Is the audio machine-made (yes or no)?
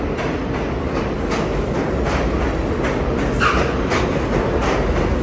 no